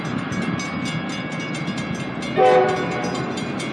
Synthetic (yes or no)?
no